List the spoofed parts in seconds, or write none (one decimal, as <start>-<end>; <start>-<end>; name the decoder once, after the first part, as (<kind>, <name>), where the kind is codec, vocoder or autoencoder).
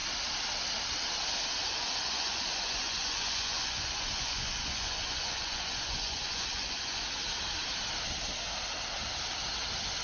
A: 1.8-7.0 (vocoder, Vocos)